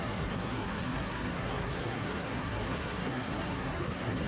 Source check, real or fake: fake